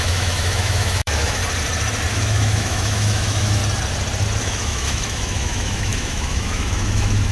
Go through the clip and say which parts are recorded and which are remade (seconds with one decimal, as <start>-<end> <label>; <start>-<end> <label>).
0.0-1.4 remade; 1.4-2.1 recorded; 2.1-3.6 remade; 3.6-4.4 recorded; 4.4-7.3 remade